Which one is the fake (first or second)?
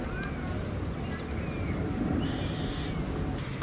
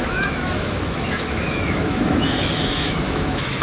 second